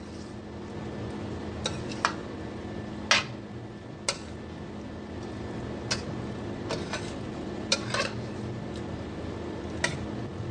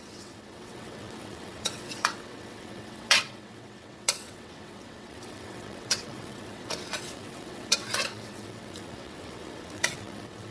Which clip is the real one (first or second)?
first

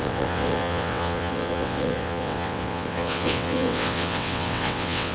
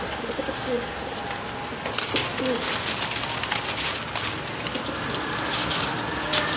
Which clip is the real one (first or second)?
second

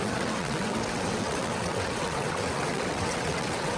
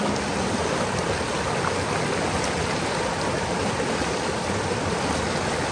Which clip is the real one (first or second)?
second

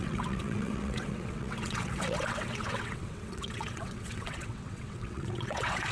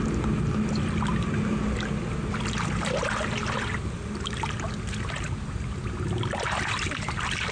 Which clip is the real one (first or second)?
second